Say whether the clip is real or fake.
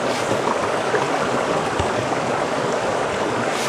fake